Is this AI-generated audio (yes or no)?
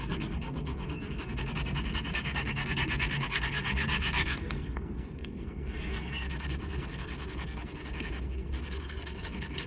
yes